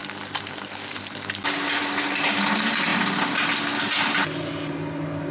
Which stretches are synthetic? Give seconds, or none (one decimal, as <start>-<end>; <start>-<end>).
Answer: none